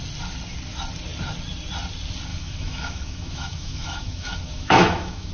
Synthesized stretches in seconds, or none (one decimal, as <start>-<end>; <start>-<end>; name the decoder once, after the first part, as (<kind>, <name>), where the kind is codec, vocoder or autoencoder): 2.3-5.3 (autoencoder, DAC-VAE)